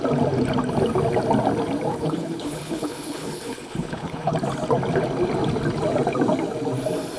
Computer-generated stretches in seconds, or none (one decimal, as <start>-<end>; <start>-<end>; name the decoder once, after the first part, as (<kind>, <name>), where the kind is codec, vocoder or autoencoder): 1.9-4.3 (codec, HILCodec)